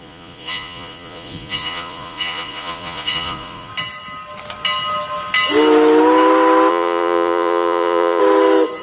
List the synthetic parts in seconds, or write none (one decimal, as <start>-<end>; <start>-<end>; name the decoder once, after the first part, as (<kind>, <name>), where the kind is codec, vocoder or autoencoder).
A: 0.0-3.7 (vocoder, Vocos); 6.7-8.2